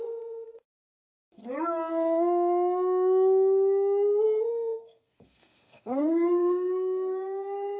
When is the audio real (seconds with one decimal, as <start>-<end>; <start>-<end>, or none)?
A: 1.4-4.5